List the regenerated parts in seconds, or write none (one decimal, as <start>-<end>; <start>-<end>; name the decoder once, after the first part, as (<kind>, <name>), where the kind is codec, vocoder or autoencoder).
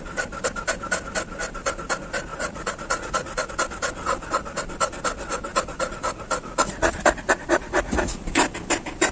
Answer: 2.3-3.5 (vocoder, Vocos); 5.5-8.2